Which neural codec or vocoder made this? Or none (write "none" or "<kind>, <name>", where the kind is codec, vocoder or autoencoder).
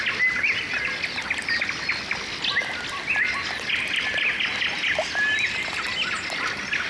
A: none